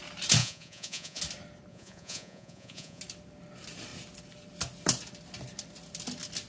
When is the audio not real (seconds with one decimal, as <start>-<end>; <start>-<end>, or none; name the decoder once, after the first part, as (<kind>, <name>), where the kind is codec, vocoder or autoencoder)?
0.4-1.2 (vocoder, Vocos); 1.7-3.0